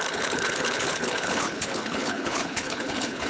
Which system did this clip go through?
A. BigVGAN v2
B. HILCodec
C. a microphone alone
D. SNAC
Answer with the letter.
B